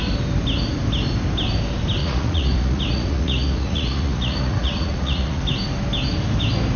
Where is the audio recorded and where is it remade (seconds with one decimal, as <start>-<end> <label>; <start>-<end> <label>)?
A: 0.0-2.0 recorded; 2.0-5.4 remade; 5.4-6.8 recorded